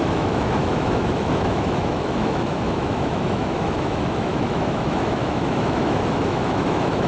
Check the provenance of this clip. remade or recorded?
remade